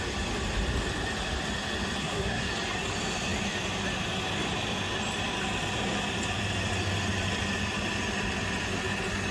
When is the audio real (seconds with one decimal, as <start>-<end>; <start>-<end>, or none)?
0.0-2.0; 2.5-9.3